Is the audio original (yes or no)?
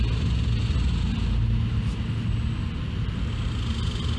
yes